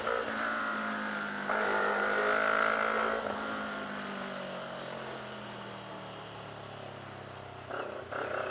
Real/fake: real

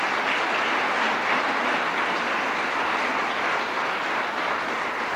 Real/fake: real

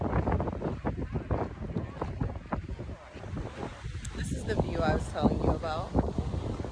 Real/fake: real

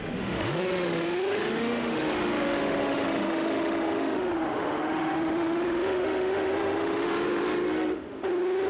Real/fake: fake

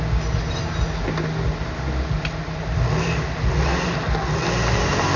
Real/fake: real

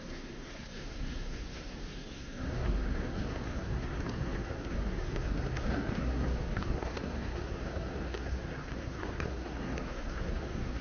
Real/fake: fake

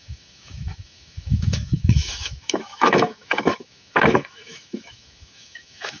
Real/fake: fake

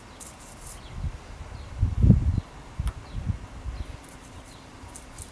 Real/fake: real